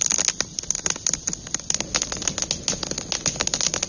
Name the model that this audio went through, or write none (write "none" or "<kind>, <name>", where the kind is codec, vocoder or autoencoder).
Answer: none